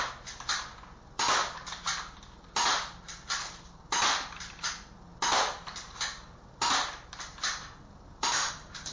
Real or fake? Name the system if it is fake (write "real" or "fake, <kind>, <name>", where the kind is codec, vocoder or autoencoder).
real